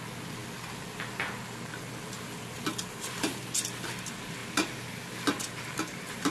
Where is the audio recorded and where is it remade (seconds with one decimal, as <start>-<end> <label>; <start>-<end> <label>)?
0.0-6.3 recorded